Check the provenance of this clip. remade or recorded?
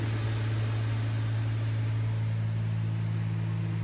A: recorded